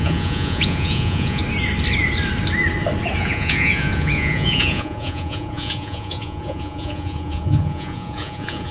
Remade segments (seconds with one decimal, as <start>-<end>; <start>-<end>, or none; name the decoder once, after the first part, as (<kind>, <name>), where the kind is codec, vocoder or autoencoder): 0.0-1.4 (vocoder, Vocos); 3.2-8.7